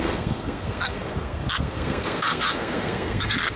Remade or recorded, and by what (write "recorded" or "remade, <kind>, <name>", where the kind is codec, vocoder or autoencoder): remade, codec, SNAC